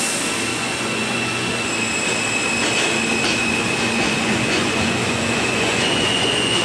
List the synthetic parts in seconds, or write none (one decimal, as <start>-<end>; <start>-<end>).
0.5-1.7; 3.4-6.6